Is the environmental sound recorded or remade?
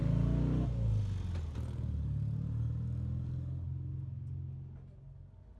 recorded